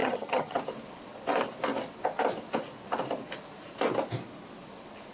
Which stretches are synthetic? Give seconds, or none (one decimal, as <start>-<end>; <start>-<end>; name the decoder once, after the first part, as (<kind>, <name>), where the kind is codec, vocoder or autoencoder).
0.0-0.6 (vocoder, HiFi-GAN)